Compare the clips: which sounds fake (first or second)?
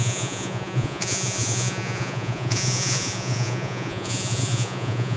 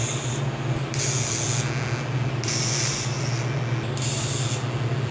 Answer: first